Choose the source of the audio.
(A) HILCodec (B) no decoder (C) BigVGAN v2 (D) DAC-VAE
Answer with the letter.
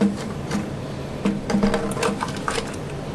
B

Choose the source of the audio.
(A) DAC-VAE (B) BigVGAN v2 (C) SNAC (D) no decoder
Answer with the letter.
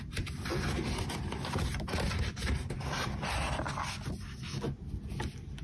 D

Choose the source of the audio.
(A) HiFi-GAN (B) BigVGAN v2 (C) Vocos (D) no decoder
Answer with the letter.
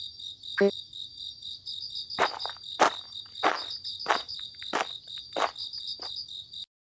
D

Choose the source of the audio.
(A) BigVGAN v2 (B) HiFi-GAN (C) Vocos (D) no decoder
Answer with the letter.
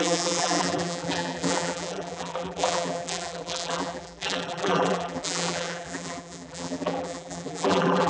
A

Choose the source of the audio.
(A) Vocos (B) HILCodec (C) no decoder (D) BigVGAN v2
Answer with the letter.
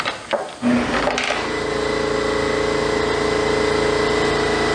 C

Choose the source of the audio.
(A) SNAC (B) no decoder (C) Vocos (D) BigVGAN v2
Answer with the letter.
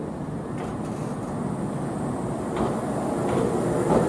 B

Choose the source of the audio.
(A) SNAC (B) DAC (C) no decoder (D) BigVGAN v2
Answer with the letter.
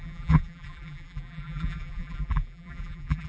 D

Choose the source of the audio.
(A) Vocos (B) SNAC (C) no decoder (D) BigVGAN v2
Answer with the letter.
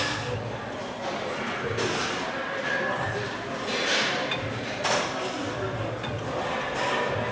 C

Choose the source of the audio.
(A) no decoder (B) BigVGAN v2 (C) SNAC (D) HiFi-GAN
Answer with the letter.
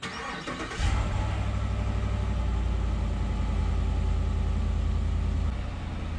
A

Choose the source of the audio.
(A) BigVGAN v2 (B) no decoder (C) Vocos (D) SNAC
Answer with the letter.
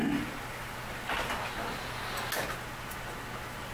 B